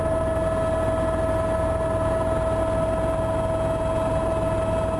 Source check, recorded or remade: recorded